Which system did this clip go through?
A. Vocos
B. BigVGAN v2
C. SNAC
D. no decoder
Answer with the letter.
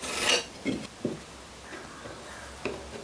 D